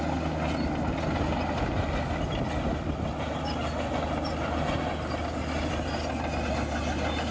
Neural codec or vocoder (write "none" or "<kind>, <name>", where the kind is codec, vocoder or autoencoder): none